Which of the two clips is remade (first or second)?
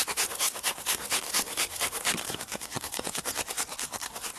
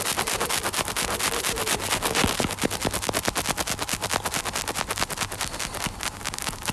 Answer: first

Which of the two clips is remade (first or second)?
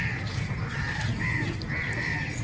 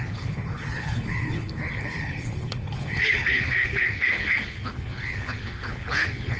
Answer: second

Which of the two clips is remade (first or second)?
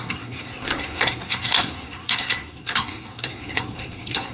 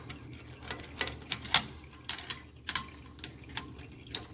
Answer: first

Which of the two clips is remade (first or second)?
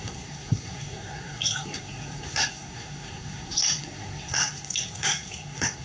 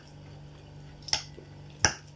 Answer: first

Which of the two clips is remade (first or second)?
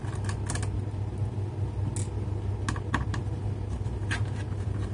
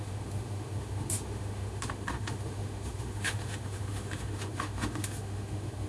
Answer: second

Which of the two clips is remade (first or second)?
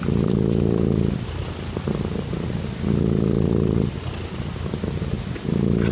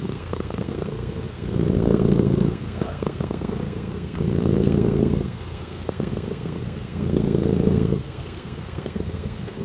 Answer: second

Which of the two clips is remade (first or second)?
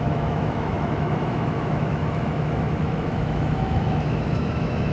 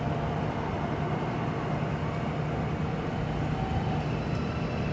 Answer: first